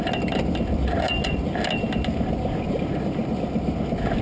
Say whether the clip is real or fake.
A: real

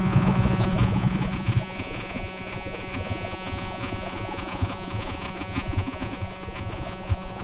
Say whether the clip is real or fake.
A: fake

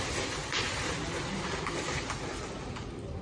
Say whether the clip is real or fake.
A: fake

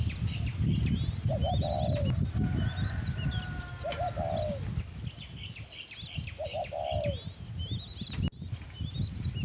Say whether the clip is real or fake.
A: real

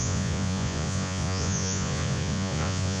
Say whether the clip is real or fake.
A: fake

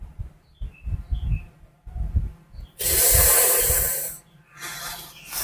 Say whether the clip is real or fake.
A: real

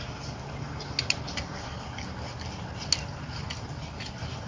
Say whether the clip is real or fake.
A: real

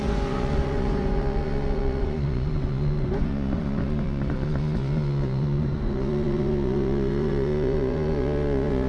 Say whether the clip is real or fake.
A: fake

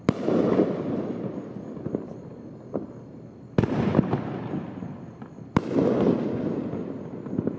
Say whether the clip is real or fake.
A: real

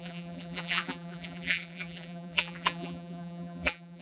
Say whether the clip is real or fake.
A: fake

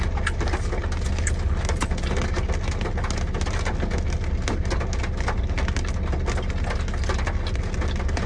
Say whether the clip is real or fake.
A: real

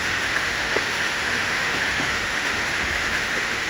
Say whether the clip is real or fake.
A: fake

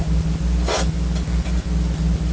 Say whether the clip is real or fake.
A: real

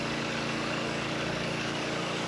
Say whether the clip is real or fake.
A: fake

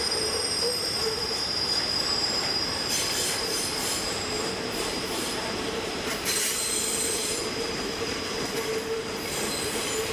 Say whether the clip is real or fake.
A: fake